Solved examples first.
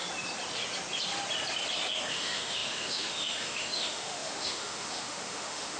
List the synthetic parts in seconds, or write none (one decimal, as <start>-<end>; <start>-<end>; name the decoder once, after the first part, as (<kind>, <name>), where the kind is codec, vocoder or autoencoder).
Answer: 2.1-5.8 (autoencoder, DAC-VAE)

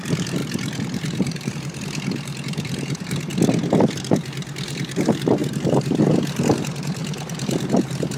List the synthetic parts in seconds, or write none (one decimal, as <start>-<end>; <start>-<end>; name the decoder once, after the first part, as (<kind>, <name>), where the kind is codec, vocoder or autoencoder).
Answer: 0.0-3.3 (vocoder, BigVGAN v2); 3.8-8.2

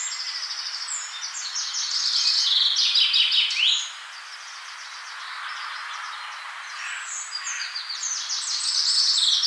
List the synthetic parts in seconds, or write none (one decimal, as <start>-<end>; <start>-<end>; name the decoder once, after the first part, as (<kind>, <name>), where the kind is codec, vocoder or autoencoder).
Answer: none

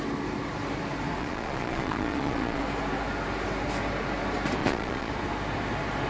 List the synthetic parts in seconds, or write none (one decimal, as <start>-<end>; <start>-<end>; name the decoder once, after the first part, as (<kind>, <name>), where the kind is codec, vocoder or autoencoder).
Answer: 1.2-2.6 (vocoder, Vocos); 4.6-5.1

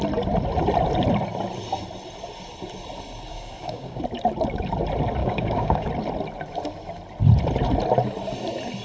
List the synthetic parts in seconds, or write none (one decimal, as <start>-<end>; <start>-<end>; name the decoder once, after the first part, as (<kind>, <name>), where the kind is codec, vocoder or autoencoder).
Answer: 3.3-4.0 (codec, DAC); 5.2-5.9

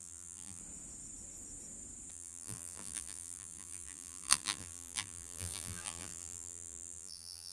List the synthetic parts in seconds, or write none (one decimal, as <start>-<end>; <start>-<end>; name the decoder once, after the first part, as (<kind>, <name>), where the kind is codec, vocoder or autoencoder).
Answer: 0.0-0.6 (vocoder, BigVGAN v2); 2.1-7.5

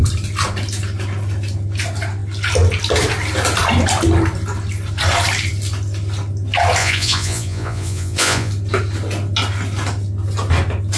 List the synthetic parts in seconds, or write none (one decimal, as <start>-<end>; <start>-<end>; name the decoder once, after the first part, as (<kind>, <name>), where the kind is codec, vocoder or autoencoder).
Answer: 6.8-8.5 (vocoder, Vocos)